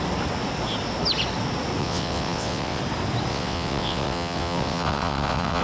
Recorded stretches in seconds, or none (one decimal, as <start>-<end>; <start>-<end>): 0.0-1.8; 2.8-3.3